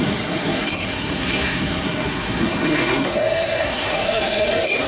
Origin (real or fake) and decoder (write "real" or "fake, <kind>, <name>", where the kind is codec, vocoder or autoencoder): fake, codec, SNAC